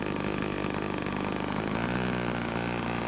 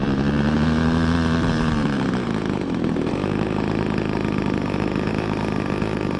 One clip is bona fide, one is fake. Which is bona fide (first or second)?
first